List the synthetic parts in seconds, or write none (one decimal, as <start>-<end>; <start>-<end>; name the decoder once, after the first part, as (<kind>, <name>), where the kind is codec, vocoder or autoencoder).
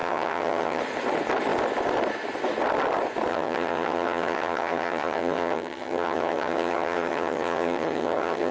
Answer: 0.0-0.8 (vocoder, HiFi-GAN); 3.3-8.5